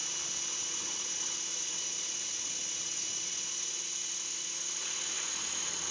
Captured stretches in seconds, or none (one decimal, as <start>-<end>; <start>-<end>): 0.0-0.6